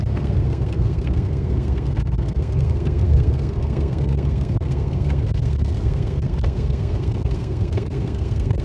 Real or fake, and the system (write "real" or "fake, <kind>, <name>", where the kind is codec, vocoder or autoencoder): fake, codec, SNAC